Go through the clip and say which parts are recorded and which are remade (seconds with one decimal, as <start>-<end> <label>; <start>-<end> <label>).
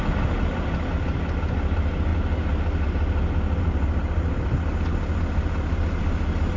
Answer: 0.0-6.6 recorded